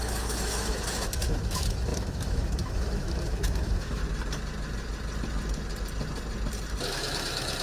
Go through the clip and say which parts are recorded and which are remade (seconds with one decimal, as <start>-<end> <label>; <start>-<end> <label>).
0.0-4.0 remade; 4.0-6.9 recorded; 6.9-7.6 remade